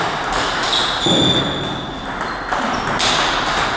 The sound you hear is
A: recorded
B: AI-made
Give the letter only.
A